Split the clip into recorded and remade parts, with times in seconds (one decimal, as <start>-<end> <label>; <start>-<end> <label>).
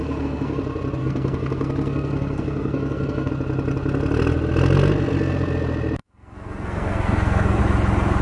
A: 0.0-0.6 remade; 0.6-1.0 recorded; 1.0-3.3 remade; 3.3-6.0 recorded; 6.0-7.6 remade; 7.6-8.2 recorded